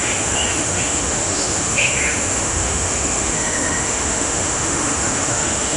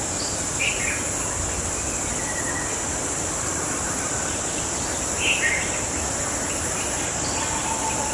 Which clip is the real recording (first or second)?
second